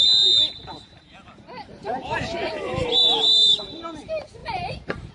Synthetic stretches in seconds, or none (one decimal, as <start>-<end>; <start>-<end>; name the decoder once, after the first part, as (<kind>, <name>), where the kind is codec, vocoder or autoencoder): 0.7-3.8 (vocoder, BigVGAN v2); 4.4-5.1